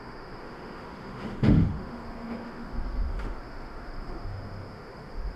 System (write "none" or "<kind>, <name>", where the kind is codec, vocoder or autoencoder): autoencoder, DAC-VAE